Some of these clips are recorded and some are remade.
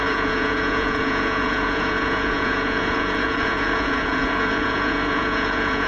remade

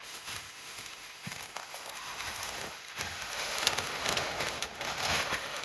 remade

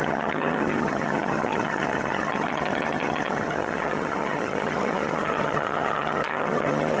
remade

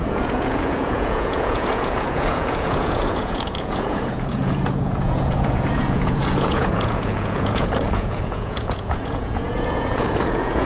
remade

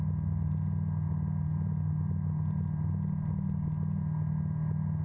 recorded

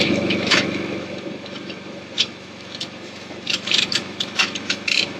remade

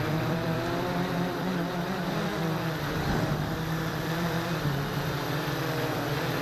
remade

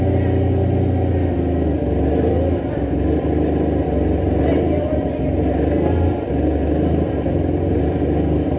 recorded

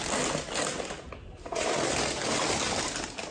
recorded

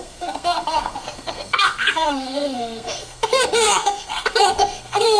remade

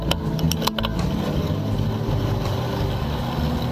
recorded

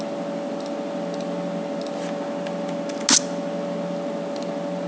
recorded